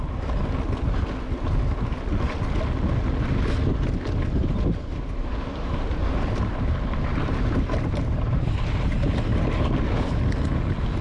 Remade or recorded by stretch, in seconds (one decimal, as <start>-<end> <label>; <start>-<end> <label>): 0.0-4.9 recorded; 4.9-8.5 remade; 8.5-9.3 recorded; 9.3-10.2 remade; 10.2-11.0 recorded